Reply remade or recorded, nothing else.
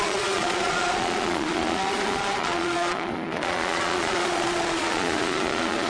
remade